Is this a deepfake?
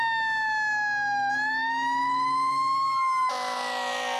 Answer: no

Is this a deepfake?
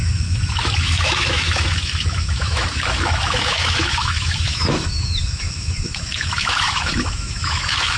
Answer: yes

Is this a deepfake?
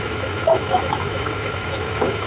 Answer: yes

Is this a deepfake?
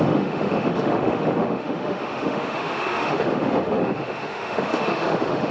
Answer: yes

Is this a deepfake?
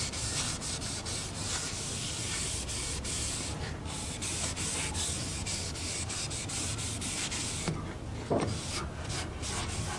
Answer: no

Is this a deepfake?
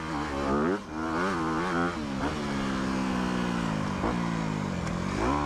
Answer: no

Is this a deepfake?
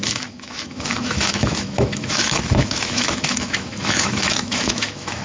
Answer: yes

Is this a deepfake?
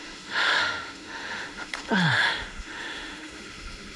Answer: yes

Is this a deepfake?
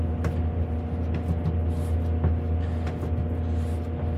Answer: no